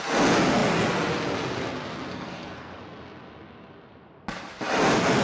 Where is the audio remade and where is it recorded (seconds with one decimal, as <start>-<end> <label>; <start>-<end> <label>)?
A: 0.0-2.1 recorded; 2.1-2.8 remade; 2.8-5.2 recorded